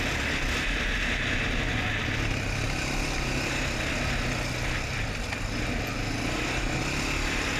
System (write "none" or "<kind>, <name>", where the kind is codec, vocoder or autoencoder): none